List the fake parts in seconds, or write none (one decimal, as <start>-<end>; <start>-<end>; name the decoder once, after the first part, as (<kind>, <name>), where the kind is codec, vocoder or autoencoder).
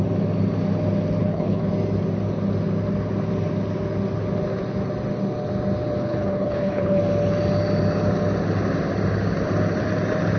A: 1.2-1.7 (codec, HILCodec); 6.0-7.0